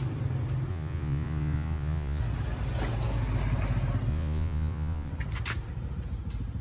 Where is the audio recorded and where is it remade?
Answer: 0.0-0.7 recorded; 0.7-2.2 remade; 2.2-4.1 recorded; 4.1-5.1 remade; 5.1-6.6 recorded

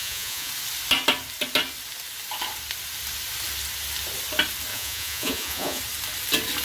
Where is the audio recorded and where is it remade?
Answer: 0.0-0.5 remade; 0.5-4.7 recorded; 4.7-5.8 remade; 5.8-6.6 recorded